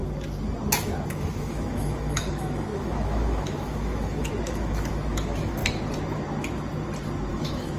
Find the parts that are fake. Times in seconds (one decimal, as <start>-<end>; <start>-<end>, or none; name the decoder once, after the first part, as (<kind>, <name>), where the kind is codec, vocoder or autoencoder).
1.4-5.6 (autoencoder, DAC-VAE); 7.3-7.8

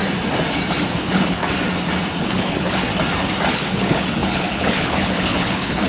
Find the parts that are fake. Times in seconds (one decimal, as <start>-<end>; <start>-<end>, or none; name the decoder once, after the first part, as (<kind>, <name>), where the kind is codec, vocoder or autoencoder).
0.9-1.4 (codec, HILCodec); 2.2-2.9; 3.5-5.9

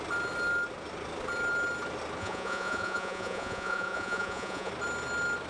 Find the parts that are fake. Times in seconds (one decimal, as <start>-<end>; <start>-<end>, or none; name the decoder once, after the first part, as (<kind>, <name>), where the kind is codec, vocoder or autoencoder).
2.2-4.7 (vocoder, Vocos)

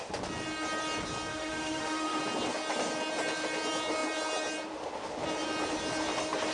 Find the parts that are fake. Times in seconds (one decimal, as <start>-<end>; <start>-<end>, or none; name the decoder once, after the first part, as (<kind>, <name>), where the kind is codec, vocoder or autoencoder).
1.3-2.2 (autoencoder, DAC-VAE)